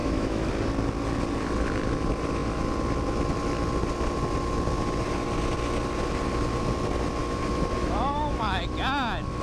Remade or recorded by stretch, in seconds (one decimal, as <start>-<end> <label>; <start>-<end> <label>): 0.0-0.5 remade; 0.5-7.2 recorded; 7.2-8.6 remade; 8.6-9.4 recorded

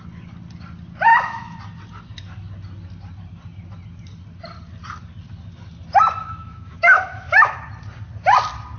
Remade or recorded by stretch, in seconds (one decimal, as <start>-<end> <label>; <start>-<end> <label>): 0.0-1.1 recorded; 1.1-1.6 remade; 1.6-6.2 recorded; 6.2-7.6 remade; 7.6-8.8 recorded

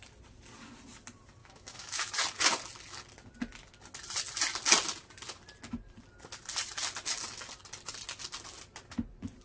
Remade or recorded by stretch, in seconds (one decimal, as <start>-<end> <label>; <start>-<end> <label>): 0.0-1.4 recorded; 1.4-2.1 remade; 2.1-9.4 recorded

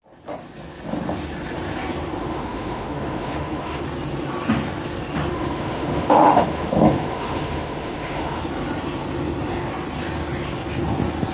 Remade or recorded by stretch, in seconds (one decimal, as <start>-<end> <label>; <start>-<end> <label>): 0.0-2.2 recorded; 2.2-3.8 remade; 3.8-5.3 recorded; 5.3-8.4 remade; 8.4-11.3 recorded